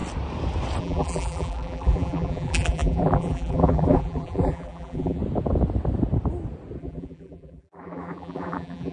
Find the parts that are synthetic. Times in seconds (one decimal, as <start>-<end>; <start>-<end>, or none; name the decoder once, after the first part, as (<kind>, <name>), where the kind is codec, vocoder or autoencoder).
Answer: 0.8-5.2 (vocoder, BigVGAN v2); 6.8-8.9